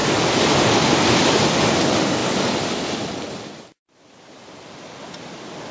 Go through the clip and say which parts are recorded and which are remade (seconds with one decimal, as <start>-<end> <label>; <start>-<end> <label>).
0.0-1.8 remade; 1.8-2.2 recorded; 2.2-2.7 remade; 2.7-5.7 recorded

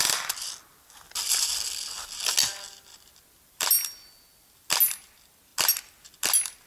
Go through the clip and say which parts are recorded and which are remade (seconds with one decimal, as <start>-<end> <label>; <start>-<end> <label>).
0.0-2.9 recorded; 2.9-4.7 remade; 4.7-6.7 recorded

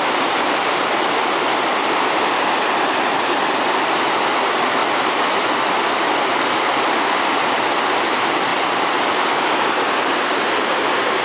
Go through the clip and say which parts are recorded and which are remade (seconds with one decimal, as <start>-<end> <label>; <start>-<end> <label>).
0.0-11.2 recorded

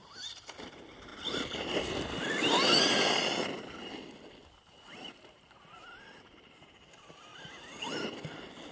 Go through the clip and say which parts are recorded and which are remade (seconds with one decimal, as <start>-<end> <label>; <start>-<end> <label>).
0.0-1.1 remade; 1.1-4.3 recorded; 4.3-7.3 remade; 7.3-8.7 recorded